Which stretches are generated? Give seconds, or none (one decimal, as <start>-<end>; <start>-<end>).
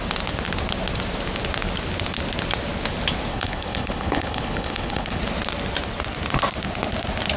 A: 3.3-5.2